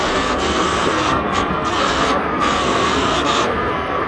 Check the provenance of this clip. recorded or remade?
remade